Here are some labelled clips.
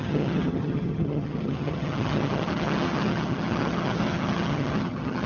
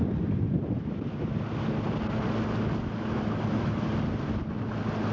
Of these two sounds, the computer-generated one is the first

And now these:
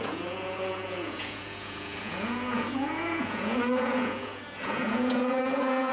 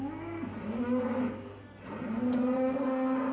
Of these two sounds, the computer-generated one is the first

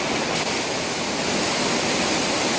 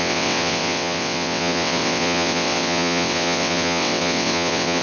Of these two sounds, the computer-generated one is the second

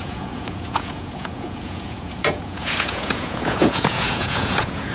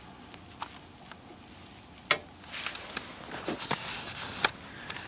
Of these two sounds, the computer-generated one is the first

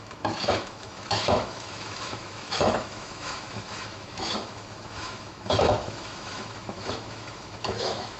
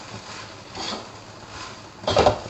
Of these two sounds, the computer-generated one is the first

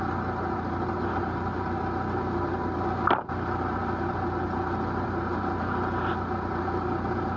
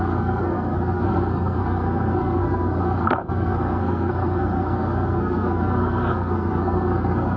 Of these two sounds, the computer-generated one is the second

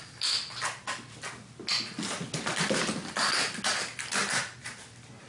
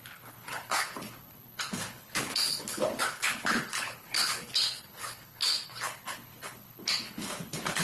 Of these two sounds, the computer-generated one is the second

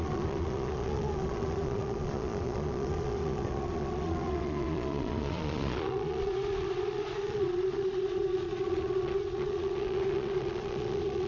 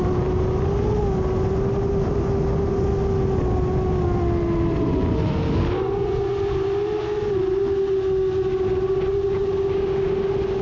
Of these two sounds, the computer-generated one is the first